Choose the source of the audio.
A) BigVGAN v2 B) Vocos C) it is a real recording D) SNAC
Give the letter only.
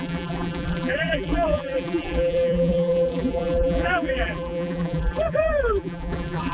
A